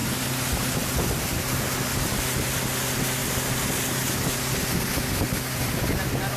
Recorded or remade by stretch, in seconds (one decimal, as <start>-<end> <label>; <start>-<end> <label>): 0.0-6.4 recorded